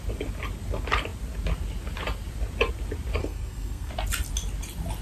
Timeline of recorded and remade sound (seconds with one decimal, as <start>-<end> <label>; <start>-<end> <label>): 0.0-3.2 recorded; 3.2-3.9 remade; 3.9-5.0 recorded